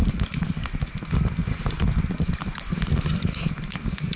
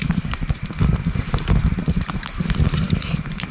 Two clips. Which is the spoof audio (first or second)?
second